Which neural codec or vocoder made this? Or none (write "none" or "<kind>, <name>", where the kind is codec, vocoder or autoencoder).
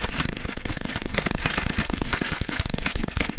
codec, SNAC